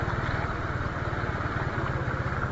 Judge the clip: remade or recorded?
recorded